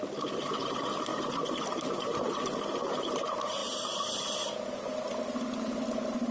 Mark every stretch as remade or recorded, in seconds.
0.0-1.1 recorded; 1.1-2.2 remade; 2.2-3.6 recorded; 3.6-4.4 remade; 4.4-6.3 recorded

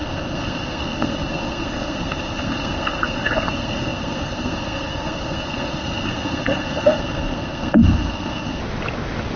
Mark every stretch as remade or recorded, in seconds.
0.0-8.6 remade; 8.6-9.4 recorded

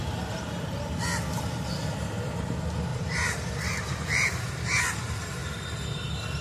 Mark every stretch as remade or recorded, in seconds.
0.0-2.9 recorded; 2.9-4.8 remade; 4.8-6.4 recorded

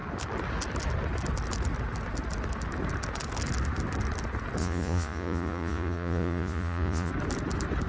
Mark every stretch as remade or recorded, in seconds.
0.0-4.6 recorded; 4.6-7.1 remade; 7.1-7.9 recorded

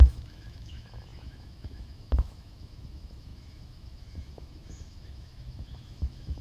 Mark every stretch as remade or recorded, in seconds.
0.0-6.4 remade